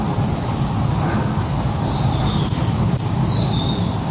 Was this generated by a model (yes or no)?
no